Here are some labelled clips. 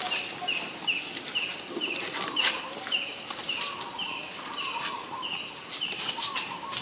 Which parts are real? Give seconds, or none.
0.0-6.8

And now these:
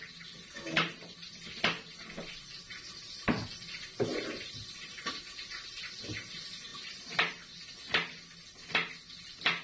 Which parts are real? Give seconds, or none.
0.0-9.6

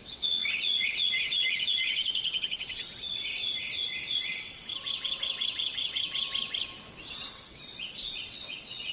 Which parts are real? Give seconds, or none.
6.3-7.3

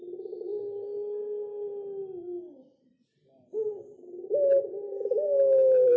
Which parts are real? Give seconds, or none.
0.0-6.0